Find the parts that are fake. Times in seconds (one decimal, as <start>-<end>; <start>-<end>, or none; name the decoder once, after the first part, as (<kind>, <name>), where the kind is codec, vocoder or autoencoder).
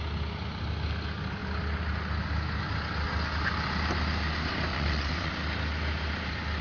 4.7-5.3 (vocoder, WaveNeXt)